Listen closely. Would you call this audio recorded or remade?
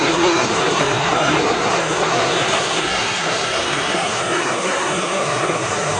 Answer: remade